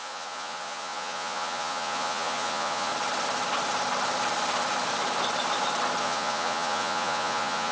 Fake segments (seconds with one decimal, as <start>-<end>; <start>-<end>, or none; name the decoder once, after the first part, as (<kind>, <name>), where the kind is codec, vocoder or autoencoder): 0.0-2.9 (vocoder, Vocos); 6.0-7.7